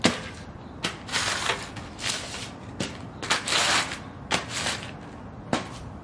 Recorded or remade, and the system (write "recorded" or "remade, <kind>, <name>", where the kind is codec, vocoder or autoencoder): recorded